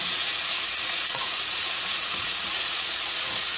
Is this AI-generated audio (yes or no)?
yes